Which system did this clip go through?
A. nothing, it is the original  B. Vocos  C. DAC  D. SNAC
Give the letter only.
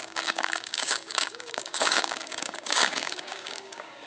C